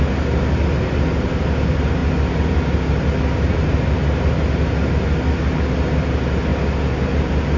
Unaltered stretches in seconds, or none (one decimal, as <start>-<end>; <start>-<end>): 0.0-7.6